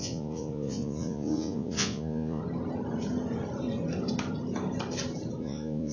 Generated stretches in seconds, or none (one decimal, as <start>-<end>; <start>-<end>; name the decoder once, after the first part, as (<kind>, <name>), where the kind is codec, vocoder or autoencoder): 0.0-2.4 (vocoder, Vocos); 5.4-5.9